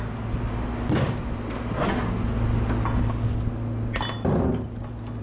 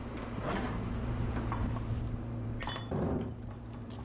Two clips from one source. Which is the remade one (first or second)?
second